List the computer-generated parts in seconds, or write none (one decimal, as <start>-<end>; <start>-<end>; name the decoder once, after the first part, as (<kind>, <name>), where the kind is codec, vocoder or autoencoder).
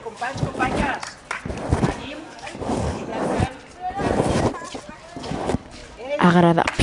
0.0-1.0 (codec, DAC); 1.8-3.1; 5.2-5.8